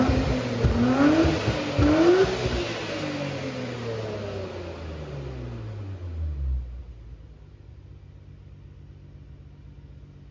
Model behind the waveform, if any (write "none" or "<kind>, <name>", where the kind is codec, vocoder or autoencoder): none